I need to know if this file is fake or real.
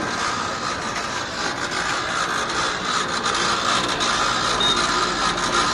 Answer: real